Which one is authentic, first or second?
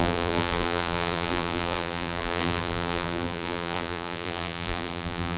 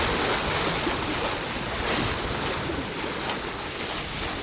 second